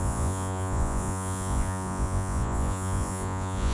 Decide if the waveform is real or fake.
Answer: fake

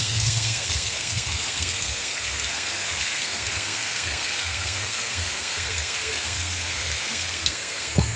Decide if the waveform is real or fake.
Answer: fake